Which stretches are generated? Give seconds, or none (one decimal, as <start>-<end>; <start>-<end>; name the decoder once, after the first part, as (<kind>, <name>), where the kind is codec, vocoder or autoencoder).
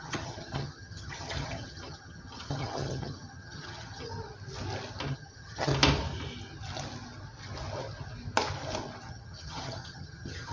0.0-4.1 (vocoder, HiFi-GAN); 5.1-5.7; 9.1-10.5